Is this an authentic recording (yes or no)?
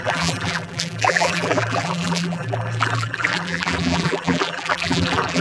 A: no